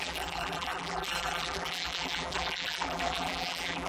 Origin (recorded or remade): remade